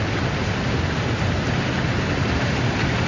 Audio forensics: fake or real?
real